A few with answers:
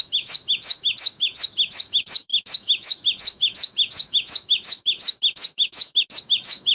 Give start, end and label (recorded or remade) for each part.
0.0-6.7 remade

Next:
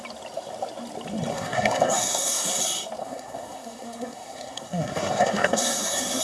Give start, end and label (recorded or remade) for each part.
0.0-1.3 recorded; 1.3-2.6 remade; 2.6-3.0 recorded; 3.0-6.2 remade

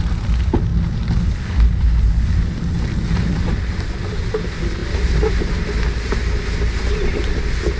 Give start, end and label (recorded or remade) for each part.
0.0-7.8 recorded

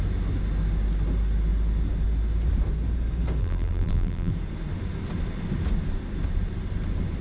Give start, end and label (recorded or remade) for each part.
0.0-3.4 recorded; 3.4-4.3 remade; 4.3-7.2 recorded

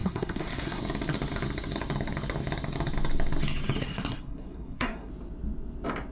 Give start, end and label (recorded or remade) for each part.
0.0-0.8 remade; 0.8-3.8 recorded; 3.8-5.1 remade; 5.1-6.1 recorded

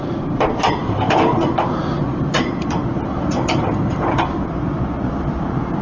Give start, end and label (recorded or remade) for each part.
0.0-5.8 remade